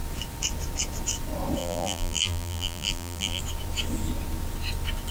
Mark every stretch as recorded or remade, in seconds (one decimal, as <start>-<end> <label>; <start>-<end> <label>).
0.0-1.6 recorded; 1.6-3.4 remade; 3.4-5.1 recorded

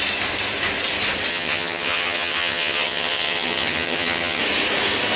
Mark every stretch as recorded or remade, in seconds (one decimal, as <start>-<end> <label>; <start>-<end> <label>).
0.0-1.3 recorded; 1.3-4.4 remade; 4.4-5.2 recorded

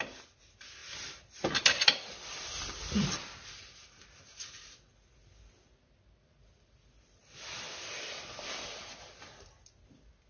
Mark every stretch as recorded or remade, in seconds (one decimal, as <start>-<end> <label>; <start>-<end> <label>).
0.0-0.8 recorded; 0.8-3.1 remade; 3.1-7.2 recorded; 7.2-8.1 remade; 8.1-10.3 recorded

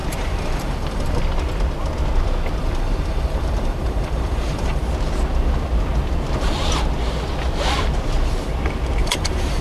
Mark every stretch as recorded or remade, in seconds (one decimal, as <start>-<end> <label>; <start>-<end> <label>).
0.0-1.2 remade; 1.2-2.6 recorded; 2.6-4.8 remade; 4.8-9.0 recorded; 9.0-9.6 remade

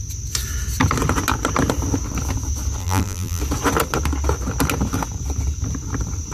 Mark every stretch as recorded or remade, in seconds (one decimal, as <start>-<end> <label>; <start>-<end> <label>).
0.0-2.8 recorded; 2.8-3.4 remade; 3.4-6.3 recorded

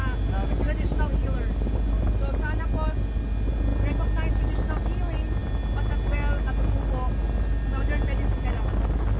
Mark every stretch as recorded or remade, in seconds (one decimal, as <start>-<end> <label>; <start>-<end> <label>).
0.0-9.2 recorded

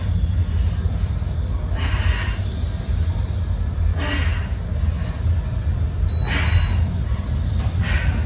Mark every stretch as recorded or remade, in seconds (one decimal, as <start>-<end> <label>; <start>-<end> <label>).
0.0-8.3 recorded

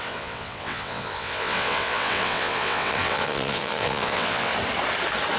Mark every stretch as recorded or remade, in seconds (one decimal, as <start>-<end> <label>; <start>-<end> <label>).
0.0-4.5 remade; 4.5-5.4 recorded